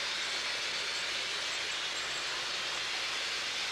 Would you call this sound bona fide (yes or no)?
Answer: yes